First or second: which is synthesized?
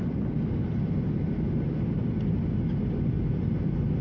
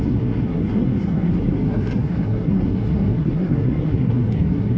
second